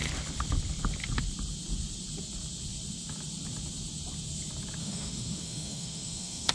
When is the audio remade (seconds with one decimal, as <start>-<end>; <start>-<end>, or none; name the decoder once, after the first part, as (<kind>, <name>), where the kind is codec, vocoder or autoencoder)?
4.8-6.5 (autoencoder, DAC-VAE)